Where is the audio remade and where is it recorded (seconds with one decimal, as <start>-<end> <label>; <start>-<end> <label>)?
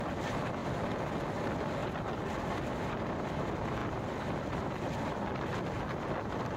0.0-6.6 recorded